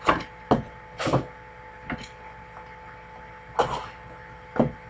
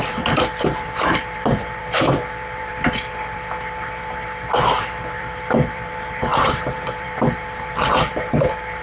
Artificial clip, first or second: second